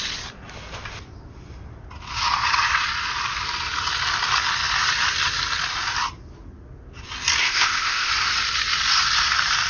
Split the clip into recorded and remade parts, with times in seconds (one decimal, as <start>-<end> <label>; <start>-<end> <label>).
0.0-7.4 recorded; 7.4-8.1 remade; 8.1-9.7 recorded